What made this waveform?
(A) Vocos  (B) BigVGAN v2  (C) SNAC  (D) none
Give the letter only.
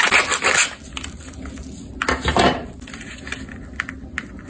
D